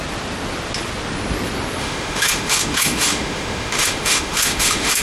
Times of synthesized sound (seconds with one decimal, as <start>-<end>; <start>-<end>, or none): 1.8-5.0